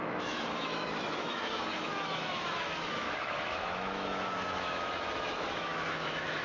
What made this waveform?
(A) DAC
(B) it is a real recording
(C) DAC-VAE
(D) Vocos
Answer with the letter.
C